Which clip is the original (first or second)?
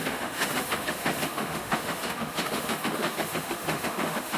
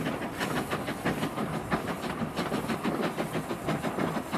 second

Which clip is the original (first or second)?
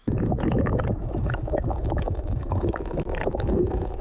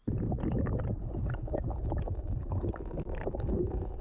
second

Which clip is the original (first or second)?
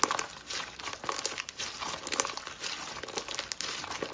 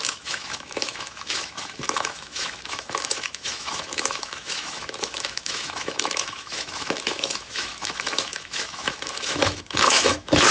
first